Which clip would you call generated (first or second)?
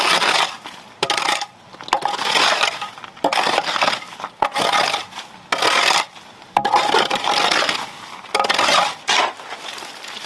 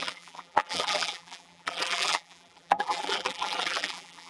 second